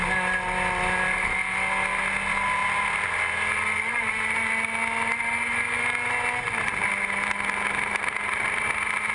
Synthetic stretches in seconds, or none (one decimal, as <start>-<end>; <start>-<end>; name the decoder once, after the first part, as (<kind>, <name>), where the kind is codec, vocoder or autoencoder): none